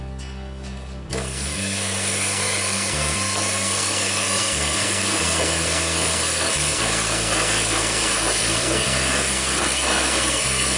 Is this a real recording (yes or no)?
no